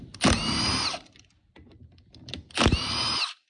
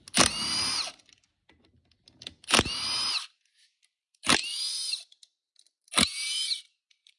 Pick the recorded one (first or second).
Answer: second